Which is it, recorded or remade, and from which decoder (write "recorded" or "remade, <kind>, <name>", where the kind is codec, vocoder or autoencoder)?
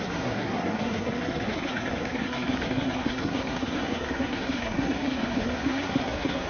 remade, codec, SNAC